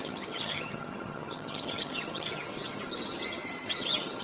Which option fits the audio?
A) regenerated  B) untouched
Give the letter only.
A